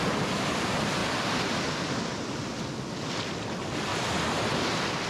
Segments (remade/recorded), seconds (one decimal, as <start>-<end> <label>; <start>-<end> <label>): 0.0-5.1 recorded